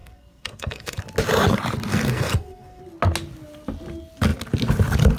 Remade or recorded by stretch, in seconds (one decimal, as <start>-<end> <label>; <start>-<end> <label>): 0.0-1.0 remade; 1.0-1.9 recorded; 1.9-2.8 remade; 2.8-5.2 recorded